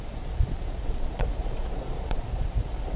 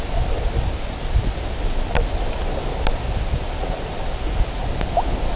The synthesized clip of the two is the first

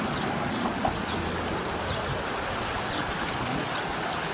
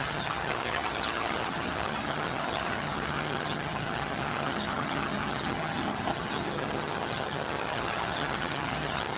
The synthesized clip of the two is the second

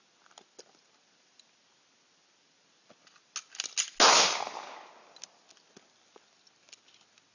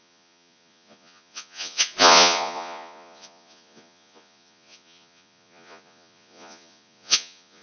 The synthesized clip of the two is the second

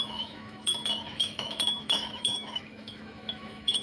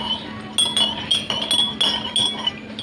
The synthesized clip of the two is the first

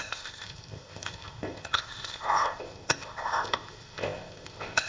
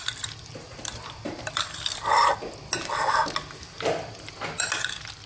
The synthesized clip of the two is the first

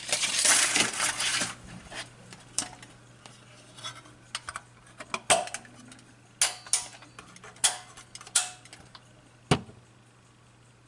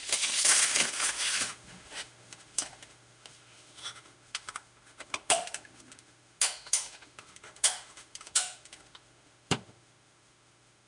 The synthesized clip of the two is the second